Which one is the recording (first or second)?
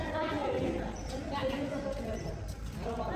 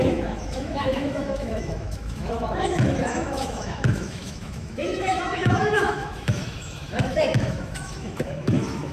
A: first